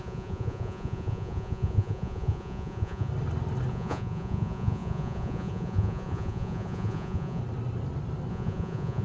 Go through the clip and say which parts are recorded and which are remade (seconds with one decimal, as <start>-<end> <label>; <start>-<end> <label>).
0.0-3.1 remade; 3.1-3.7 recorded; 3.7-7.4 remade; 7.4-8.3 recorded; 8.3-9.0 remade